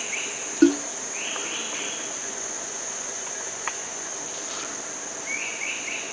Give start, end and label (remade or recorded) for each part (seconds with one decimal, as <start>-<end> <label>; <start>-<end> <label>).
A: 0.0-2.2 recorded; 2.2-4.1 remade; 4.1-5.4 recorded; 5.4-6.1 remade